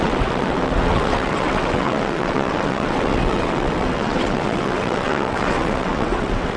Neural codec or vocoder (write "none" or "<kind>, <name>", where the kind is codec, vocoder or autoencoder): vocoder, WaveNeXt